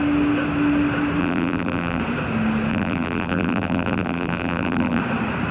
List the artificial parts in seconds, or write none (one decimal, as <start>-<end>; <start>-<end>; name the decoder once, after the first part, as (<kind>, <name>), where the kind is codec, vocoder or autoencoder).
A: 1.2-2.0 (vocoder, BigVGAN v2); 2.7-5.0